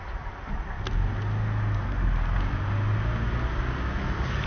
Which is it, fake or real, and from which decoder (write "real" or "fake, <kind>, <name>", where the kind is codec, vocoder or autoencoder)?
real